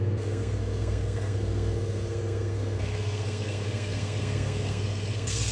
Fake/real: fake